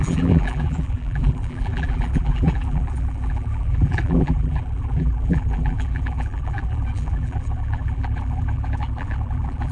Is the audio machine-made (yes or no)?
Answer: yes